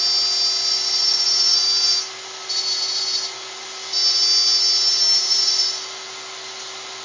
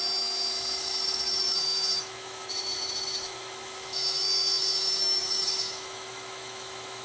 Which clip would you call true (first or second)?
first